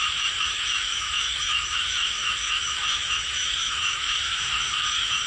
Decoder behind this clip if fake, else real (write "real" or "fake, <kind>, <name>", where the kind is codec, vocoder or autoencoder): fake, autoencoder, DAC-VAE